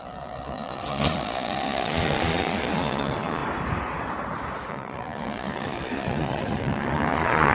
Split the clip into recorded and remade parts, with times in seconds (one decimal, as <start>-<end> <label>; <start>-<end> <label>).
0.0-3.4 remade; 3.4-4.7 recorded; 4.7-7.5 remade